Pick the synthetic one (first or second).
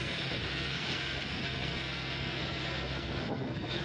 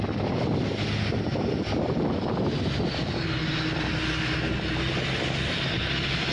first